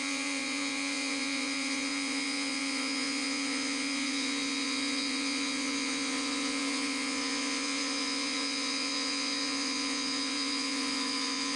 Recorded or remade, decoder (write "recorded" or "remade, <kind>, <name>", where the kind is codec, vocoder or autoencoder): remade, vocoder, Vocos